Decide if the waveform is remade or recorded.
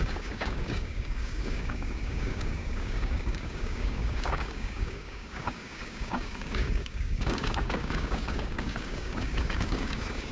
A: remade